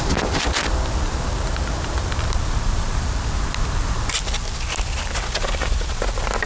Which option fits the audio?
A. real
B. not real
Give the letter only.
A